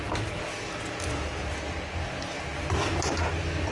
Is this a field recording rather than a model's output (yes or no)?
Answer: yes